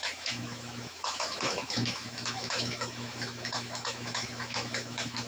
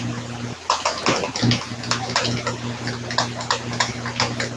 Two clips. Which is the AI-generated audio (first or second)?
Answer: first